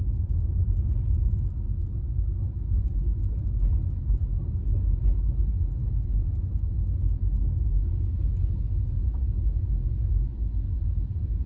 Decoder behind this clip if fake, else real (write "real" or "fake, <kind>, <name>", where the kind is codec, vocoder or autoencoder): real